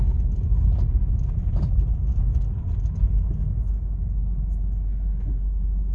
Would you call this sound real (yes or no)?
yes